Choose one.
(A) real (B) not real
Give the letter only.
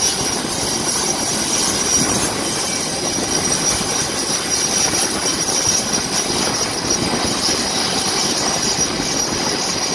A